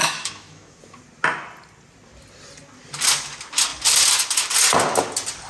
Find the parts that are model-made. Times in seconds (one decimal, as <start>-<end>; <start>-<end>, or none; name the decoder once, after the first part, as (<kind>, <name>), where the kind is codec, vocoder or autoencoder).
0.0-0.8 (autoencoder, DAC-VAE)